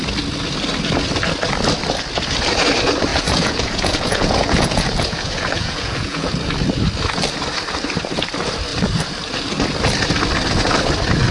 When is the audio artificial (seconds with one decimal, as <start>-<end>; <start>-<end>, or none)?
3.1-6.3